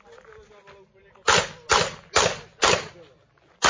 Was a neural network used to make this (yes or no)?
no